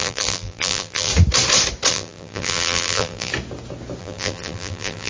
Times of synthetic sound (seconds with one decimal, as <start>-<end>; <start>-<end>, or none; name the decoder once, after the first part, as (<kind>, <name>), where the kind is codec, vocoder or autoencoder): 0.0-1.1 (vocoder, BigVGAN v2); 1.9-3.3; 4.0-5.1